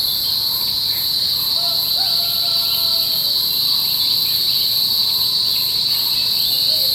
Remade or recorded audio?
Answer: recorded